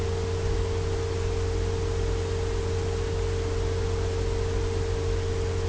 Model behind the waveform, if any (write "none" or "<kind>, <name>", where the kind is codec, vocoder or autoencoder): none